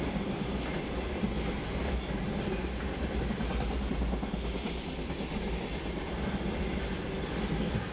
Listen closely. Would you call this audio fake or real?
real